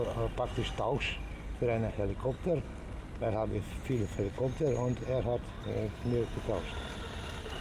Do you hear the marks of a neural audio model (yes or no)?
no